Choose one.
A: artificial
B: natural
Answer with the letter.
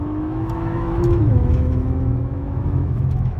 A